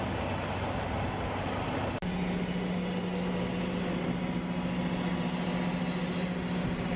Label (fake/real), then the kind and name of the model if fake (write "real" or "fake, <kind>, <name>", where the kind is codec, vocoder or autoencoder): real